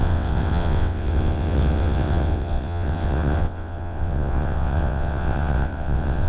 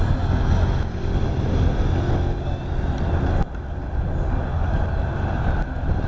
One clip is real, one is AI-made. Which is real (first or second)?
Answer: second